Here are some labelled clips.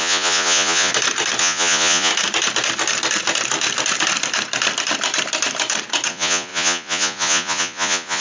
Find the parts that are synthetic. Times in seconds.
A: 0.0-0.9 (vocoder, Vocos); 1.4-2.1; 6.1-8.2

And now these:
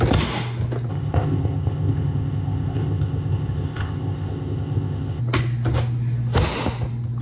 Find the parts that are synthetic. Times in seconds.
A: 0.9-5.2 (codec, ZipCodec)

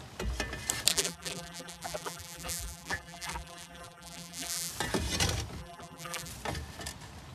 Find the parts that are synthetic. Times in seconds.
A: 0.9-4.7 (vocoder, BigVGAN v2); 5.6-6.3

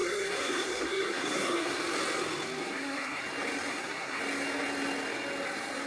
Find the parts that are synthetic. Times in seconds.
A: 0.0-1.8 (codec, SNAC); 2.6-3.2; 3.7-4.2